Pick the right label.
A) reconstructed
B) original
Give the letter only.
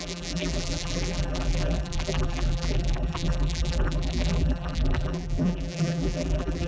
A